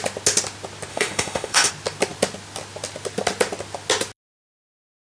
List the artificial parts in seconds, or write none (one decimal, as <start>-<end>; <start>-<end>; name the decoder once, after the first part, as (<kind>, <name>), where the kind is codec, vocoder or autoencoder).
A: 0.9-1.7 (autoencoder, DAC-VAE)

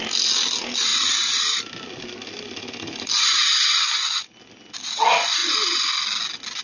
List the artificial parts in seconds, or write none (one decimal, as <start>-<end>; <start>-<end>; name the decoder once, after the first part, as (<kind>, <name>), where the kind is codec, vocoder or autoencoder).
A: none

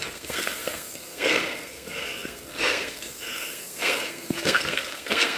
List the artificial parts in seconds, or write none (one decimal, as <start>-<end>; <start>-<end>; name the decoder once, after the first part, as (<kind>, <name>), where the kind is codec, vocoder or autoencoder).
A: 0.0-5.4 (codec, SNAC)

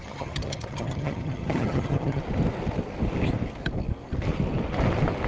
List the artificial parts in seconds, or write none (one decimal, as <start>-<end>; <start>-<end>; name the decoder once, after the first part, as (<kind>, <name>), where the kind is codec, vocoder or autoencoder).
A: 0.0-2.2 (vocoder, HiFi-GAN)

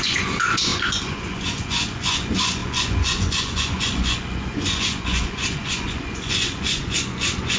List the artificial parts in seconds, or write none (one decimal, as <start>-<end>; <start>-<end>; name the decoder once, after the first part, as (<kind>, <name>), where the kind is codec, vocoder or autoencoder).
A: 0.0-7.6 (vocoder, Vocos)

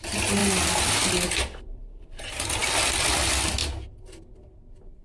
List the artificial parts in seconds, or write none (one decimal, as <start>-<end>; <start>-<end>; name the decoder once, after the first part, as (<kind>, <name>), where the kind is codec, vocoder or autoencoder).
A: none